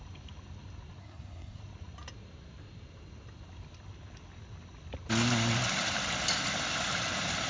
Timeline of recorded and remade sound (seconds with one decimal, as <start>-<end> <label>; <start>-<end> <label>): 0.0-1.0 recorded; 1.0-1.6 remade; 1.6-7.5 recorded